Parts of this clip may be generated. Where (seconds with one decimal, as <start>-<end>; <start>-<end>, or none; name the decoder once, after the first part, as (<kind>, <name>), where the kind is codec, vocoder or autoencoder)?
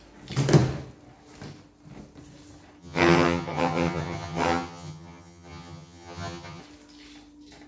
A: 2.8-6.6 (vocoder, HiFi-GAN)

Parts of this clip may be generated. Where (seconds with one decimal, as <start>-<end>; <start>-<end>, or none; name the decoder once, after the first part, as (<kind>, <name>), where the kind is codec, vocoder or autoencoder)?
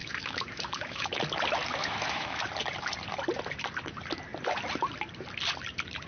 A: 0.0-1.2 (autoencoder, DAC-VAE); 1.8-2.4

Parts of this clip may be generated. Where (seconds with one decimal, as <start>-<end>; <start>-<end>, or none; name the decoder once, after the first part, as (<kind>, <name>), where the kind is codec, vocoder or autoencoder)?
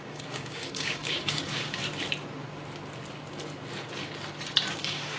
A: 0.0-1.8 (codec, DAC); 4.7-5.2